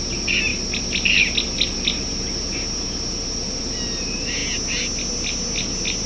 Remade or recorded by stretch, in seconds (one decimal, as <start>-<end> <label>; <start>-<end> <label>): 0.0-6.1 recorded